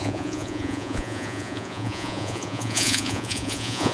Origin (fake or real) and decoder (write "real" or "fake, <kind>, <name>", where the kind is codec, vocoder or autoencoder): fake, vocoder, Vocos